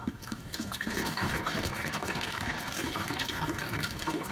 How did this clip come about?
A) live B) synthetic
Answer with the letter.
B